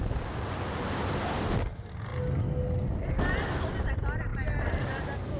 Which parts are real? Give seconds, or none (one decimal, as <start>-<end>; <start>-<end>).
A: 0.0-5.4